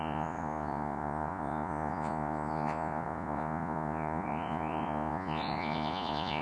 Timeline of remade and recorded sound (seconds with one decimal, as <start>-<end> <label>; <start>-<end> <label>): 0.0-6.4 remade